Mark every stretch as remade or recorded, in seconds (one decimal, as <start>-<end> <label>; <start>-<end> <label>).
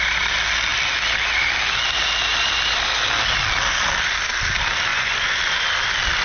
0.0-4.9 recorded; 4.9-5.4 remade; 5.4-6.2 recorded